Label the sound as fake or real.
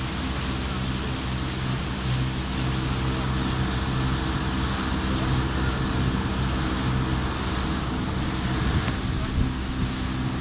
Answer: real